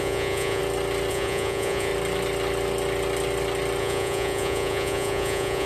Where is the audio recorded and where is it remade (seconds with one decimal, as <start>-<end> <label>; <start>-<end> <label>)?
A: 0.0-0.6 remade; 0.6-1.1 recorded; 1.1-1.9 remade; 1.9-3.8 recorded; 3.8-5.7 remade